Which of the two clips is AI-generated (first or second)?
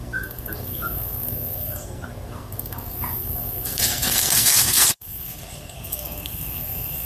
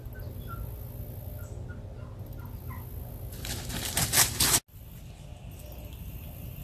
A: first